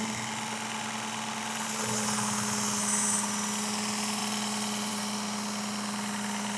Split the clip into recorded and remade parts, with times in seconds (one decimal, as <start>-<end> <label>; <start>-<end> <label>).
0.0-6.6 recorded